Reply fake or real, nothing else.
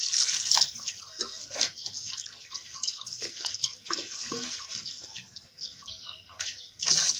fake